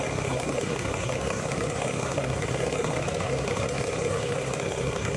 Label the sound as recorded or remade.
remade